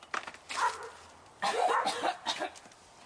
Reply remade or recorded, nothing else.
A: recorded